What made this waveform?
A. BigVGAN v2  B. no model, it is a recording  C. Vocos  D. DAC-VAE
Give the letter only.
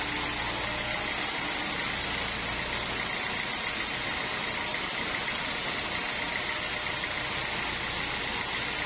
B